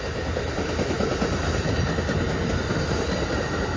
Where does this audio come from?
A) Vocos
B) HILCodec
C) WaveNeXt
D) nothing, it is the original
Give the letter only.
D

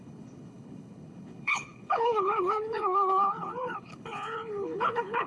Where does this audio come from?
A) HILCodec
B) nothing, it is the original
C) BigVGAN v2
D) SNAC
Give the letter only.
A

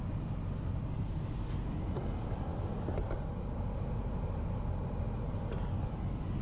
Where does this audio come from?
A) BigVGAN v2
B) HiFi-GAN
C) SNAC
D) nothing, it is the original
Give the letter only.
D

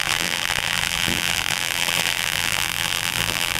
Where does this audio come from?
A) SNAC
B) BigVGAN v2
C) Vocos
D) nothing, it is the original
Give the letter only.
B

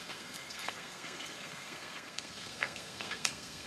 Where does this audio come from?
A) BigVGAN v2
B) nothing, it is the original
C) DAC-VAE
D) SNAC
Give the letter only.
D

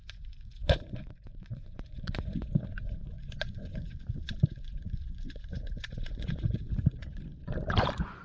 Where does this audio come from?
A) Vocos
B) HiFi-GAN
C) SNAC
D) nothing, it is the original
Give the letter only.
A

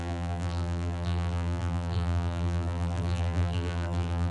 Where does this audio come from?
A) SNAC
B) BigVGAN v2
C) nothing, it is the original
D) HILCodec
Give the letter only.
B